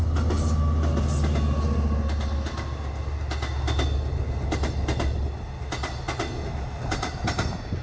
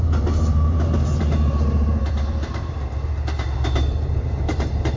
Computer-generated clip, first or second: second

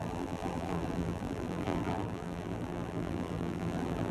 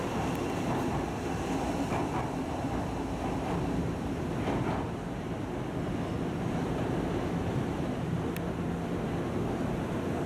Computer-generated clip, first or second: first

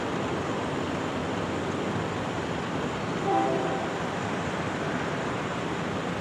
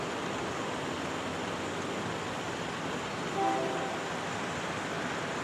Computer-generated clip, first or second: first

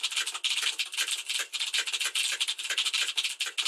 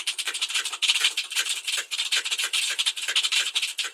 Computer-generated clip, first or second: second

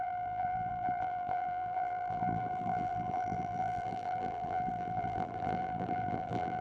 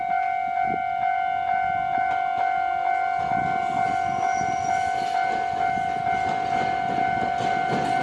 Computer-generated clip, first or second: first